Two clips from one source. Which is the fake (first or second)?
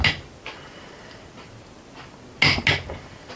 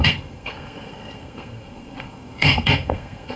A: second